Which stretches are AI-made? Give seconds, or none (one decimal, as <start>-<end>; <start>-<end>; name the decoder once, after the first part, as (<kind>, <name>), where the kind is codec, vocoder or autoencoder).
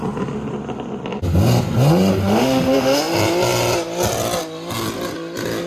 2.2-3.0 (autoencoder, DAC-VAE)